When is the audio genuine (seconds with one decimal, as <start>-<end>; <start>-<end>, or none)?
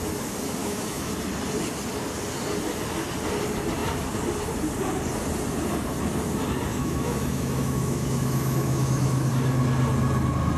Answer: 0.0-0.6; 1.1-6.7; 9.3-10.6